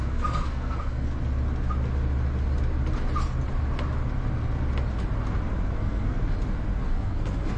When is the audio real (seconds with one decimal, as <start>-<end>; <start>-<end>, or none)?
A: 1.1-5.7; 6.2-6.8